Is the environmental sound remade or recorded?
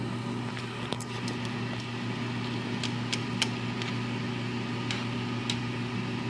recorded